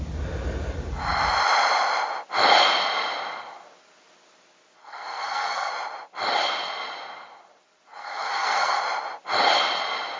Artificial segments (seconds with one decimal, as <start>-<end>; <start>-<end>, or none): 4.8-5.7; 8.0-8.8